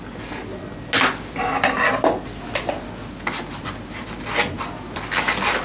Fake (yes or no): no